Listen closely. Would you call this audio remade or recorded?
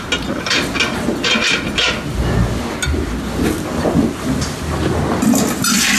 recorded